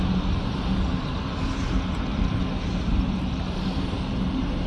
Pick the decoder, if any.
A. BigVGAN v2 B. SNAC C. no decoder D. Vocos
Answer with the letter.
C